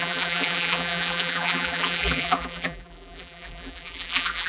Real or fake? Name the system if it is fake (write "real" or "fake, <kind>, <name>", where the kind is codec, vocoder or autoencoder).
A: fake, vocoder, BigVGAN v2